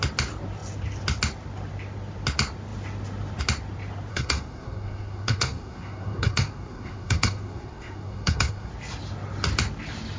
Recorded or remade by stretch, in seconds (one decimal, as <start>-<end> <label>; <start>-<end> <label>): 0.0-4.1 recorded; 4.1-8.7 remade; 8.7-10.2 recorded